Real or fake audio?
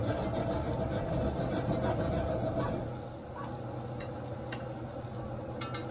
real